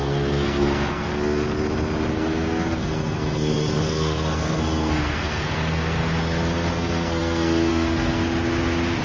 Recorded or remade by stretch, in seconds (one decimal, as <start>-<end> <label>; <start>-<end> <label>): 0.0-1.1 remade; 1.1-2.1 recorded; 2.1-6.0 remade; 6.0-6.7 recorded; 6.7-8.2 remade; 8.2-9.0 recorded